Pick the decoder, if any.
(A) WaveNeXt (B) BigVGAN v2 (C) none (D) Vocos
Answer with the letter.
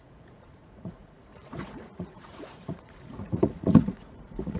D